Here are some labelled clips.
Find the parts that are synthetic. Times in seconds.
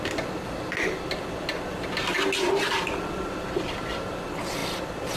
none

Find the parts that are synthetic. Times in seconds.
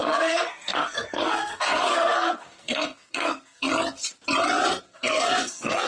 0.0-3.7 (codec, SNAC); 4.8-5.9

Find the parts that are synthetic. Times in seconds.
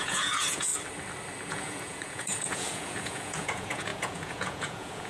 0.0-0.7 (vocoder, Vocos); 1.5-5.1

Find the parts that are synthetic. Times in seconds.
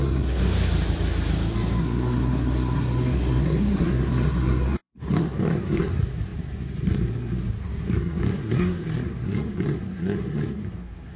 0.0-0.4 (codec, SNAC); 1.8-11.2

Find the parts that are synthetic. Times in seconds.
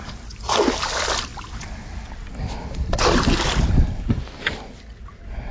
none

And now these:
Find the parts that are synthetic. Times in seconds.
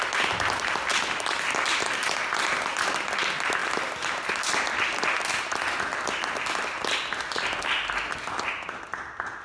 none